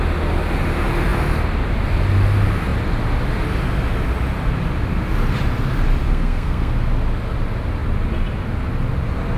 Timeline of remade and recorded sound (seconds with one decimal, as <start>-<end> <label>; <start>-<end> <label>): 0.0-6.0 recorded; 6.0-6.7 remade; 6.7-9.4 recorded